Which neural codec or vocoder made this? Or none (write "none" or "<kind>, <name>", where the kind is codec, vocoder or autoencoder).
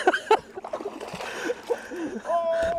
none